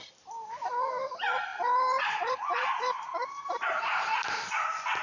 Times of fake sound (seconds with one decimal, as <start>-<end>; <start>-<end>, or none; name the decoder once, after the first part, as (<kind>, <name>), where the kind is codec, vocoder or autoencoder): 1.5-4.5 (vocoder, BigVGAN v2)